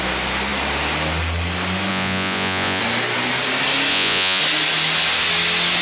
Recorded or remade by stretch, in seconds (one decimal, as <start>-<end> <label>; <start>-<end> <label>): 0.0-1.9 recorded; 1.9-2.8 remade; 2.8-3.9 recorded; 3.9-4.4 remade; 4.4-5.8 recorded